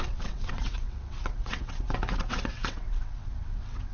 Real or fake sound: fake